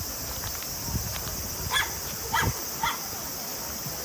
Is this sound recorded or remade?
recorded